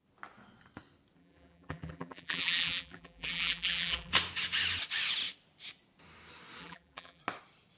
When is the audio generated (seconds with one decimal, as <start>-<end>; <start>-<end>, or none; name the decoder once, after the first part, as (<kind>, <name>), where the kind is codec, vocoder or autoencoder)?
1.2-4.1 (vocoder, BigVGAN v2); 6.6-7.2